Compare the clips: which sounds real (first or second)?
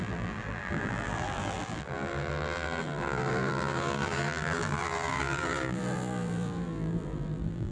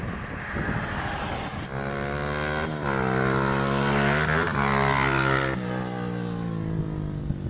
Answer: second